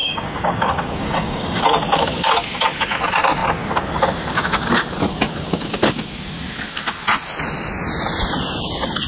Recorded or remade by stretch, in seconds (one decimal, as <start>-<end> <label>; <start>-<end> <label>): 0.0-1.6 remade; 1.6-9.1 recorded